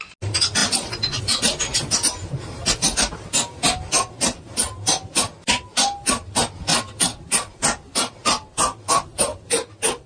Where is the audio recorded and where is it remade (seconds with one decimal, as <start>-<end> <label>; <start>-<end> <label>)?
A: 0.0-10.1 recorded